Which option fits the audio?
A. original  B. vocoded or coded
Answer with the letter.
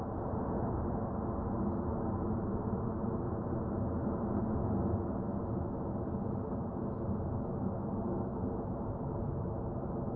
A